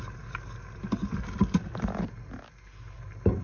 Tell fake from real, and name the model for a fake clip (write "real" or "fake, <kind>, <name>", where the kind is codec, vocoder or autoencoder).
real